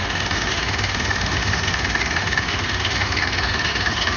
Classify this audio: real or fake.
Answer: fake